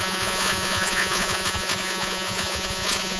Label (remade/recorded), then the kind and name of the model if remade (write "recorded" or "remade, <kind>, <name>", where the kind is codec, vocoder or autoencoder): remade, vocoder, Vocos